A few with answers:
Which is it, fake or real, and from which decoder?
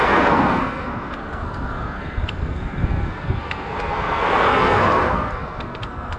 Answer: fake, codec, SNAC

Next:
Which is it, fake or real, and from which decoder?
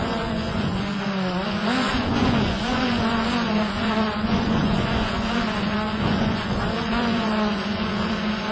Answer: fake, vocoder, Vocos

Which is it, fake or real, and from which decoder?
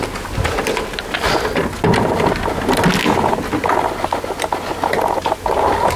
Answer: real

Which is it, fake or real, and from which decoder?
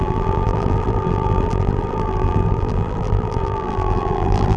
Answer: fake, vocoder, BigVGAN v2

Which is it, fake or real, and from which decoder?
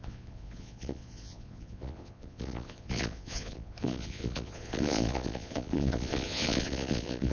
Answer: fake, vocoder, Vocos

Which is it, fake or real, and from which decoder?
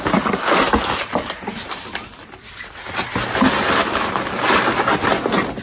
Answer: real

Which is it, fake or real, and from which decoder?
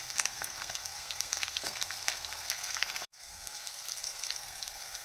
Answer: fake, codec, SNAC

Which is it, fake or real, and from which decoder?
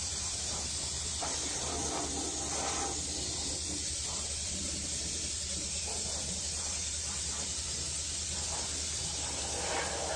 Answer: real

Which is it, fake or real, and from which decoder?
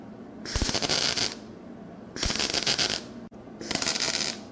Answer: real